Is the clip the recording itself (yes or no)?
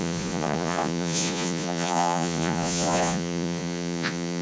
no